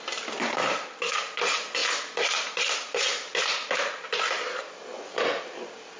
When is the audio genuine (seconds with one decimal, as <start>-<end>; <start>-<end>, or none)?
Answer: 0.0-6.0